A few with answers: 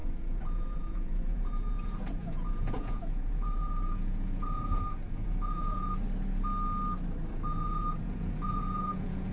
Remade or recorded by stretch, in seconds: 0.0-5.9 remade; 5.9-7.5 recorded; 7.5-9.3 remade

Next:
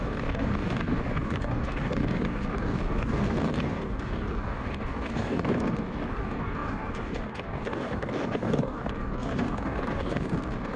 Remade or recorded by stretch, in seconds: 0.0-10.8 remade

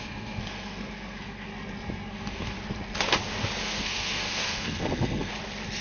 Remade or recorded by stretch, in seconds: 0.0-1.5 remade; 1.5-2.1 recorded; 2.1-2.6 remade; 2.6-3.6 recorded; 3.6-5.3 remade; 5.3-5.8 recorded

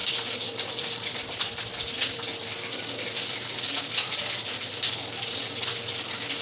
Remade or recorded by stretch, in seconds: 0.0-6.4 recorded

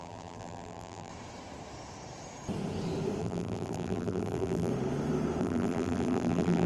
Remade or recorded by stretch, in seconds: 0.0-1.1 remade; 1.1-3.2 recorded; 3.2-4.7 remade; 4.7-5.4 recorded; 5.4-6.7 remade

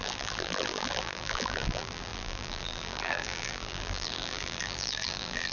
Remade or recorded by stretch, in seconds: 0.0-5.5 remade

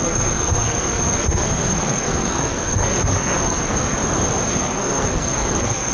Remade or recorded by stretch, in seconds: 0.0-4.0 remade; 4.0-4.5 recorded; 4.5-5.9 remade